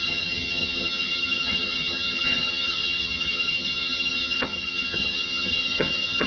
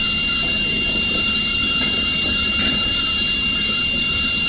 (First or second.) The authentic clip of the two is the second